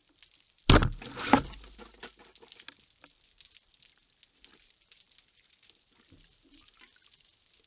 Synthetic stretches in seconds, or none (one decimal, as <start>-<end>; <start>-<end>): none